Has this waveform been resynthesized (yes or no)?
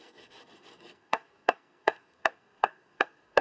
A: yes